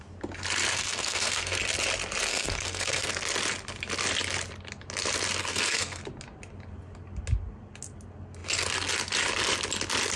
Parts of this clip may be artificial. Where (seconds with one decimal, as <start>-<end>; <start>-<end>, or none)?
0.7-1.6; 2.3-3.1; 5.4-6.0